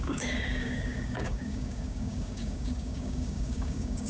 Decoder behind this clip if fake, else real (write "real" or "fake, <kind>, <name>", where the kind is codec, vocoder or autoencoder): fake, codec, DAC